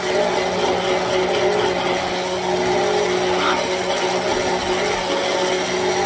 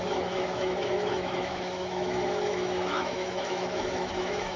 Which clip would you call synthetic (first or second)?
second